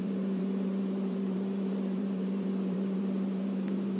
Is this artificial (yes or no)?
yes